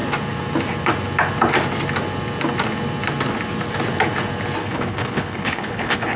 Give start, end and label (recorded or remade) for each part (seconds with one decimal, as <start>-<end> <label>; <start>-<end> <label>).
0.0-4.6 recorded; 4.6-6.2 remade